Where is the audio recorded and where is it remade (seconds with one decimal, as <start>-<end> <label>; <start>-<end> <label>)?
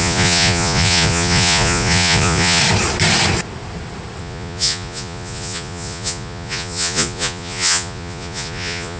0.0-2.6 remade; 2.6-4.2 recorded; 4.2-9.0 remade